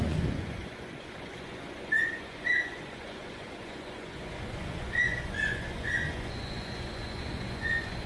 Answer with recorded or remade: remade